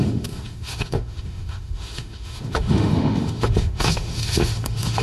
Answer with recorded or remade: remade